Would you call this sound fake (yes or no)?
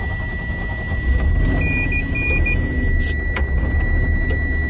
no